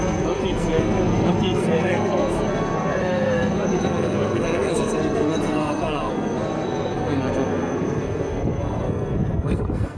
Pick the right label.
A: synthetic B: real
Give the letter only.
A